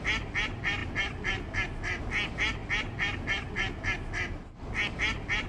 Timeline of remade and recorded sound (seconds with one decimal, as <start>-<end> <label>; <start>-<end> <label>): 0.0-5.5 recorded